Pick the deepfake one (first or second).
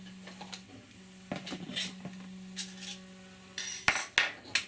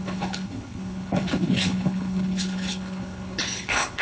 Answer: second